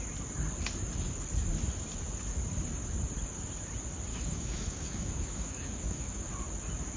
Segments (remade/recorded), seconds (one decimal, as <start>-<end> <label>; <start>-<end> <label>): 0.0-4.1 recorded; 4.1-6.3 remade; 6.3-7.0 recorded